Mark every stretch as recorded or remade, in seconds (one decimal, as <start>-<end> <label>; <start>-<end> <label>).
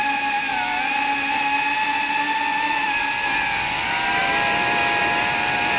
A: 0.0-5.8 recorded